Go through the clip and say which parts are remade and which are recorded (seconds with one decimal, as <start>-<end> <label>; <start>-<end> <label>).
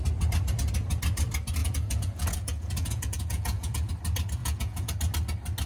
0.0-1.6 recorded; 1.6-3.9 remade; 3.9-4.4 recorded; 4.4-4.9 remade; 4.9-5.7 recorded